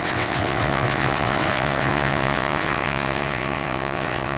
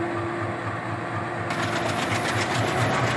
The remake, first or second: first